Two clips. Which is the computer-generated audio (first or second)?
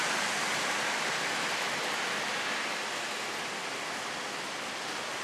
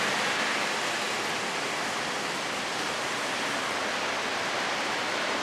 second